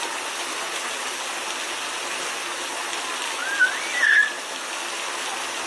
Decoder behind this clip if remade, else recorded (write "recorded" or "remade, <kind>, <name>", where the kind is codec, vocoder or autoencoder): recorded